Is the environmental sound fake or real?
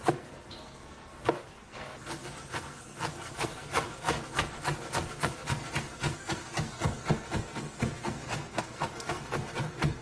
fake